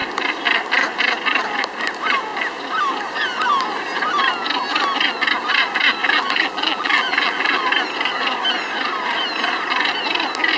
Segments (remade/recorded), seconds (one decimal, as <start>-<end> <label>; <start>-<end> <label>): 0.0-6.0 recorded; 6.0-7.6 remade; 7.6-10.6 recorded